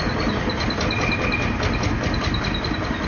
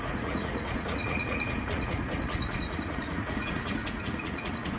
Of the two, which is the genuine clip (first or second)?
first